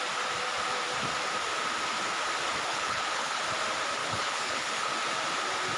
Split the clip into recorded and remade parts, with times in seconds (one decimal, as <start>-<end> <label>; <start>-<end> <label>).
0.0-2.7 recorded; 2.7-3.4 remade; 3.4-4.0 recorded; 4.0-4.9 remade; 4.9-5.8 recorded